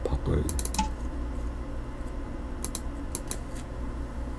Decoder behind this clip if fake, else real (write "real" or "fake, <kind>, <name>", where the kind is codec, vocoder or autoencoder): real